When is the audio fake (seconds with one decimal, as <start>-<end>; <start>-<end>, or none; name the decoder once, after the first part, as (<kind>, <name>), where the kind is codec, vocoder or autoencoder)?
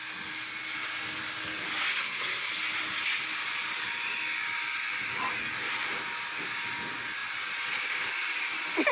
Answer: 1.9-2.5 (codec, SNAC)